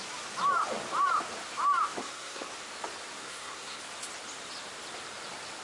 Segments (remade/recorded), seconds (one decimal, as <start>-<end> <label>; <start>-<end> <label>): 0.0-2.0 recorded; 2.0-2.5 remade; 2.5-3.2 recorded; 3.2-3.8 remade; 3.8-5.6 recorded